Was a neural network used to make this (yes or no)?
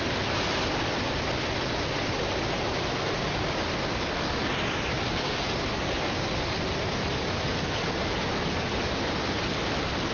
no